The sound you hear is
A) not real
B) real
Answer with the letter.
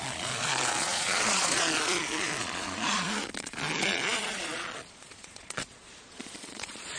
A